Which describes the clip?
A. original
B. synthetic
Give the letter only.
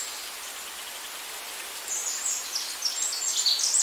A